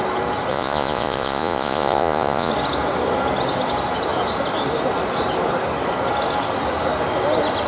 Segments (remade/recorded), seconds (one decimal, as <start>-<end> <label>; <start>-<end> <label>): 0.0-0.5 recorded; 0.5-2.5 remade; 2.5-7.7 recorded